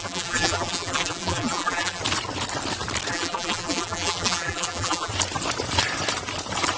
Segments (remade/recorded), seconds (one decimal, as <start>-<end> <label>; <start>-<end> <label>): 0.0-2.0 remade; 2.0-3.1 recorded; 3.1-5.1 remade; 5.1-6.8 recorded